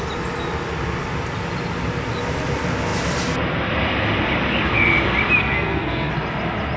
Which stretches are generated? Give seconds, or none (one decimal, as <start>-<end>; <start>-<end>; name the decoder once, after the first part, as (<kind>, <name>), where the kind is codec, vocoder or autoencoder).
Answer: 5.4-6.1 (codec, SNAC)